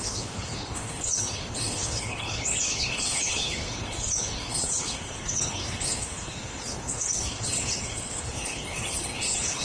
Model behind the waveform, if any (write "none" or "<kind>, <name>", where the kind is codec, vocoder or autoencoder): codec, HILCodec